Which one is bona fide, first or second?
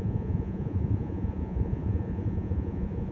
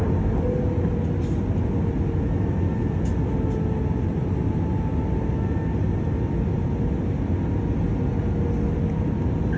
second